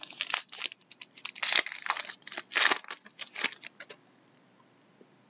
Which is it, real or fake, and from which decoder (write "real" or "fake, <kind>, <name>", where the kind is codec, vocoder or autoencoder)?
real